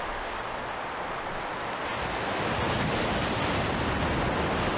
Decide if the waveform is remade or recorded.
recorded